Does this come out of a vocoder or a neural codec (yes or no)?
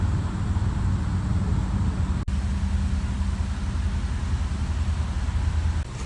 no